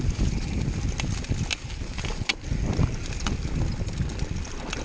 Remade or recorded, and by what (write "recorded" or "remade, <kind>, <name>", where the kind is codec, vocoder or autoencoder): recorded